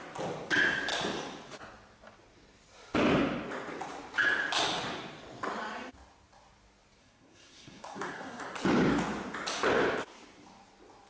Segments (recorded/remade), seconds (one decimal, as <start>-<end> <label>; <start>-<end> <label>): 0.0-7.0 recorded; 7.0-8.4 remade; 8.4-11.1 recorded